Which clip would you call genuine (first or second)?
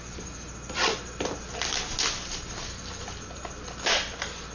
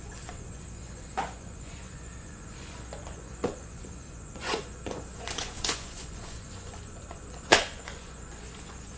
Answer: first